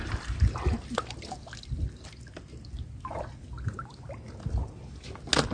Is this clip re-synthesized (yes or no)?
no